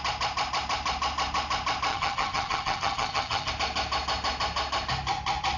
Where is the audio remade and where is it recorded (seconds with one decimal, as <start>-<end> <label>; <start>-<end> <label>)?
0.0-1.9 recorded; 1.9-3.5 remade; 3.5-5.6 recorded